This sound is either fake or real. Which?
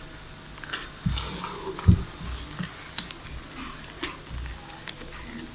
real